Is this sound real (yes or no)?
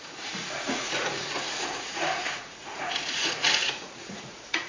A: no